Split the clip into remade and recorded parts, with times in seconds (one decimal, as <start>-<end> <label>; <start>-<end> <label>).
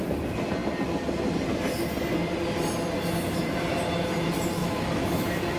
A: 0.0-4.6 recorded; 4.6-5.6 remade